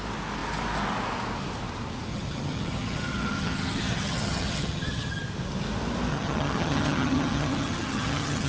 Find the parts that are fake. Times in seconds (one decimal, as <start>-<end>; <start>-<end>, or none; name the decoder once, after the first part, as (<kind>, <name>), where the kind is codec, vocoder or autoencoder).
2.1-5.2 (vocoder, HiFi-GAN); 6.1-8.5